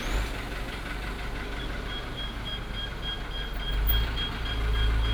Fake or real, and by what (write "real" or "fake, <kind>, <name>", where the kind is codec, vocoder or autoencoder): real